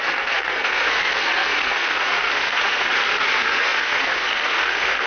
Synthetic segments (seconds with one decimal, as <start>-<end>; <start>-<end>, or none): 0.0-5.1